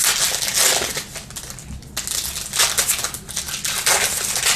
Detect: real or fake real